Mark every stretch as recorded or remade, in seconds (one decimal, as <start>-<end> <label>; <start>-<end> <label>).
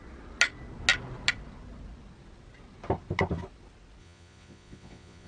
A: 0.0-4.0 recorded; 4.0-5.3 remade